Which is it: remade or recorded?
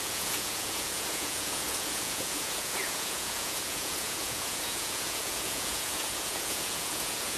remade